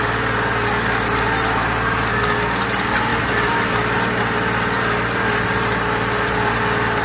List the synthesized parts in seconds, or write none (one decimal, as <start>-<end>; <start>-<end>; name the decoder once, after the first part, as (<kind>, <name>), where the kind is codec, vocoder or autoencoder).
none